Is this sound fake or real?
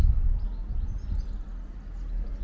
real